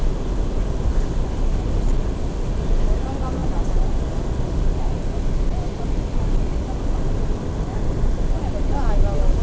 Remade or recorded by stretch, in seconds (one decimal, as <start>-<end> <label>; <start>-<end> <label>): 0.0-9.4 recorded

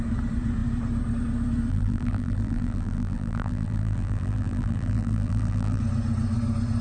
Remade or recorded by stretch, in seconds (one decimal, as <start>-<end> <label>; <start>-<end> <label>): 0.0-1.7 recorded; 1.7-5.8 remade; 5.8-6.8 recorded

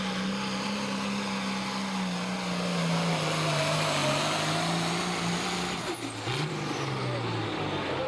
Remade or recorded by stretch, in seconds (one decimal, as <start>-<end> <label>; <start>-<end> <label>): 0.0-8.1 recorded

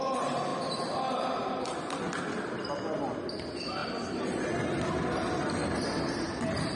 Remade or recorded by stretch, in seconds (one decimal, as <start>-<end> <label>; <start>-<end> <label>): 0.0-6.8 recorded

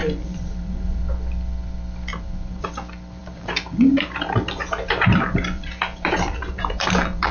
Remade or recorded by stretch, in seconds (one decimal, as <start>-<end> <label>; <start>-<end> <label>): 0.0-1.0 remade; 1.0-2.1 recorded; 2.1-2.7 remade; 2.7-3.2 recorded; 3.2-7.3 remade